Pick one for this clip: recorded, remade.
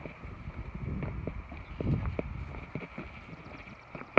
recorded